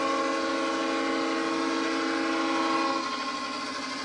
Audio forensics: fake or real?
real